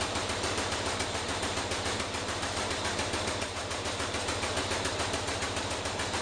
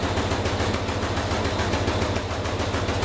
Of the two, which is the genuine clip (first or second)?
second